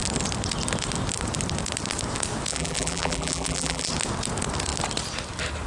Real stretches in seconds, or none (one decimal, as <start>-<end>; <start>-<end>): 0.0-2.5; 3.9-5.7